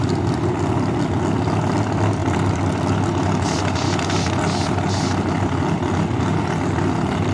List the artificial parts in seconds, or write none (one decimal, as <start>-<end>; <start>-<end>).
none